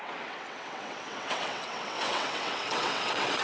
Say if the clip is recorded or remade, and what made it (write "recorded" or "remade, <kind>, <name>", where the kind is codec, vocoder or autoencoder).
remade, vocoder, WaveNeXt